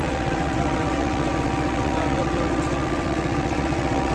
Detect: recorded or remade remade